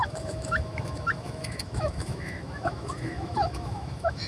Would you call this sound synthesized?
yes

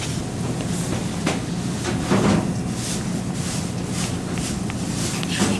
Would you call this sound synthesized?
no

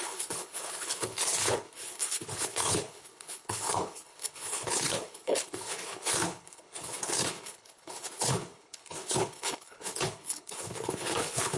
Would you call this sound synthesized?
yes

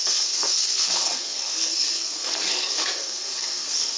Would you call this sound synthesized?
yes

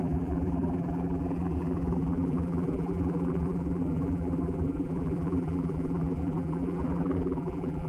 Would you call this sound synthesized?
yes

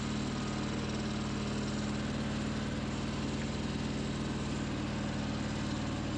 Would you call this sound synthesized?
no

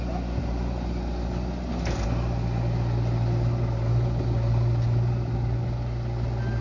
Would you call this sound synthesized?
no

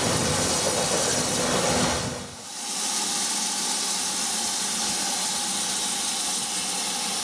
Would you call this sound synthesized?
no